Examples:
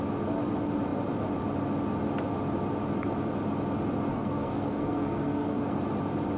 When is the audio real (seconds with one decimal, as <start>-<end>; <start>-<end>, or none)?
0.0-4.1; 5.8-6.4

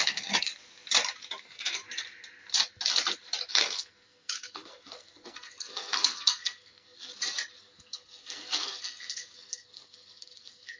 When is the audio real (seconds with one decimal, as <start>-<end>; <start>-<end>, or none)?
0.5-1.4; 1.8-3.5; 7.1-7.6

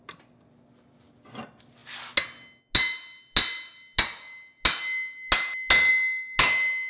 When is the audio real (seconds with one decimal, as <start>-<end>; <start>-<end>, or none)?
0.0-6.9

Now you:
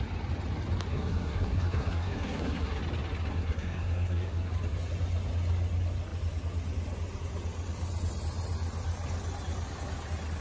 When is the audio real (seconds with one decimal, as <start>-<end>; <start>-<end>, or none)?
0.0-0.9; 2.8-3.3; 4.5-10.4

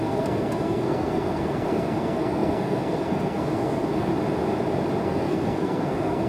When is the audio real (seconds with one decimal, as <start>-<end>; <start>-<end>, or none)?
4.1-5.0

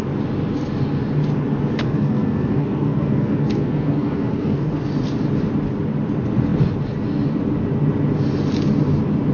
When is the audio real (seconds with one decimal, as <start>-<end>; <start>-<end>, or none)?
0.0-1.8; 4.7-9.3